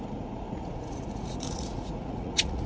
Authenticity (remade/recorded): remade